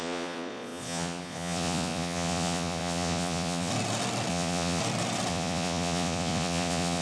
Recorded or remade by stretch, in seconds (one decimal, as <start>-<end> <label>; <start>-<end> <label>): 0.0-3.7 remade; 3.7-4.3 recorded; 4.3-4.8 remade; 4.8-5.3 recorded; 5.3-7.0 remade